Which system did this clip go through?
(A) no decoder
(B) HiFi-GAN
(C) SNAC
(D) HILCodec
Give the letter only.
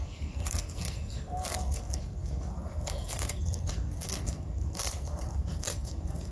C